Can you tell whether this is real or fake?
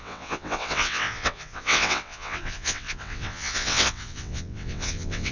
fake